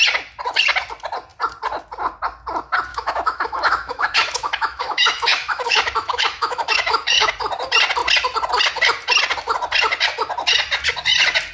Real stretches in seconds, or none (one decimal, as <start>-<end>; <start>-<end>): 0.0-2.9; 7.3-11.5